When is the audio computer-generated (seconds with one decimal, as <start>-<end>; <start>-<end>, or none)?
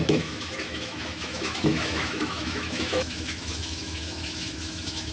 0.0-5.1